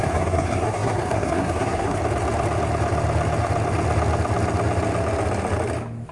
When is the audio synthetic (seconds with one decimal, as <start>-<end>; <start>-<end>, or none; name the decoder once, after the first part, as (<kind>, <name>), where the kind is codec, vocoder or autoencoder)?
0.0-2.0 (codec, SNAC)